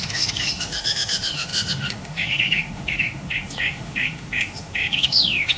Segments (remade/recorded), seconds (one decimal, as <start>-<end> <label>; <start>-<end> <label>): 0.0-5.6 remade